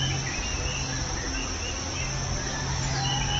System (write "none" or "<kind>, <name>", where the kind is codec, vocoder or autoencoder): none